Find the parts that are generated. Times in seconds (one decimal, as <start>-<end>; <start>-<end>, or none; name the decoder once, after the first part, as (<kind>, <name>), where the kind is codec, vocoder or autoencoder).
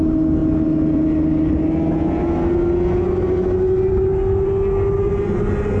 none